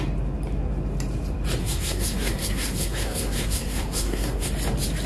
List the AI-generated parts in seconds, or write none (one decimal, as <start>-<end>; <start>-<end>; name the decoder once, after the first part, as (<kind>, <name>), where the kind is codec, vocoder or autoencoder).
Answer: 1.6-4.5 (codec, SNAC)

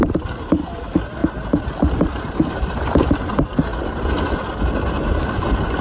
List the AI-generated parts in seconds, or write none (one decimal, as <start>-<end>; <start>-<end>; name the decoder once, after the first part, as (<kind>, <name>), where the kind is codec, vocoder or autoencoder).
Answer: 0.0-1.2 (vocoder, BigVGAN v2); 1.9-3.7; 4.9-5.8

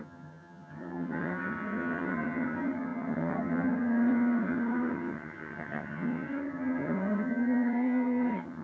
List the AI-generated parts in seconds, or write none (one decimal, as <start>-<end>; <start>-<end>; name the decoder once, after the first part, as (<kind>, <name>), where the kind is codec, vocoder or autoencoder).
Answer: 0.0-8.6 (vocoder, HiFi-GAN)

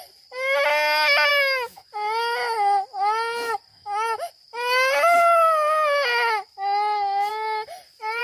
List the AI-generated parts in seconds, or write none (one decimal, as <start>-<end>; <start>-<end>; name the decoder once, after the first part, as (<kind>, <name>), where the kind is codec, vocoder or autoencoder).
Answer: 1.3-1.9 (autoencoder, DAC-VAE); 3.7-4.3

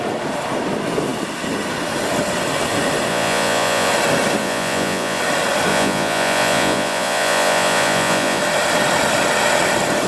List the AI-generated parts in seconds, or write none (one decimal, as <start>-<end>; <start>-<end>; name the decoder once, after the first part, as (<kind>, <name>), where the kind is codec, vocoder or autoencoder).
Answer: 3.1-3.9 (vocoder, Vocos); 4.4-5.2; 5.7-8.4

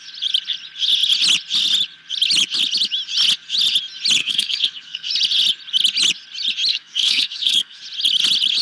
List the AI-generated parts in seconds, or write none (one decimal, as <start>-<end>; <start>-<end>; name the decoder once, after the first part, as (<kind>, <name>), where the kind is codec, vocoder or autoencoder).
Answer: 4.2-5.1 (codec, SNAC); 6.7-7.8